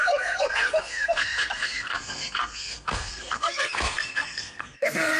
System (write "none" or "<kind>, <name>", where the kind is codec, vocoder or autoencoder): codec, SNAC